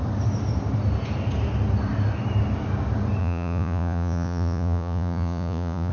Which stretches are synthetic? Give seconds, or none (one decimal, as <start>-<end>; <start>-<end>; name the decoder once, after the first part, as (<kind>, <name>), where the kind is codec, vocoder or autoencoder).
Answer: 3.2-5.9 (vocoder, Vocos)